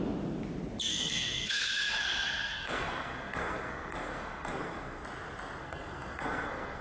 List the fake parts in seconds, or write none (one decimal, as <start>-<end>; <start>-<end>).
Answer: 0.9-5.0; 5.6-6.8